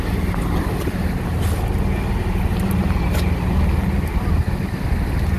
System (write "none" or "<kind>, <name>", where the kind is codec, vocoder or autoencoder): none